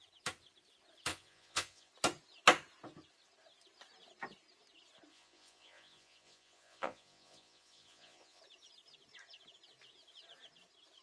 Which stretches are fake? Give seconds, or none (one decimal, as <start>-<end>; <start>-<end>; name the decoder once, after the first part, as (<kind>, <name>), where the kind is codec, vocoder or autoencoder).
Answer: 1.1-1.9 (vocoder, Vocos); 5.1-8.4